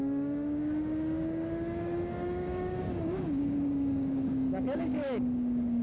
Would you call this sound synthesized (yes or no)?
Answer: yes